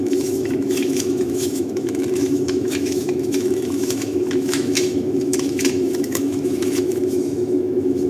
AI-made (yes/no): yes